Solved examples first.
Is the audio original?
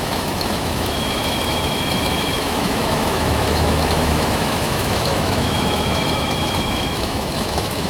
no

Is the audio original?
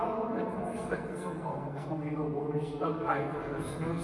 no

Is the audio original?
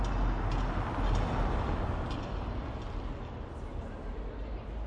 yes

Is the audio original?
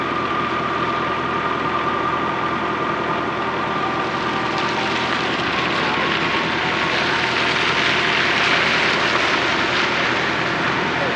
yes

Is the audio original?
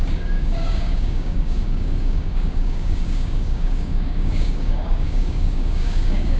no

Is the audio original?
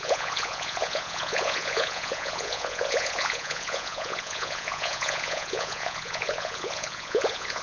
no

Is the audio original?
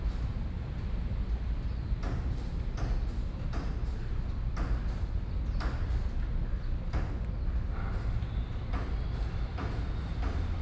yes